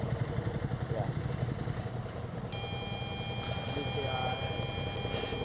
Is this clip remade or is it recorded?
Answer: recorded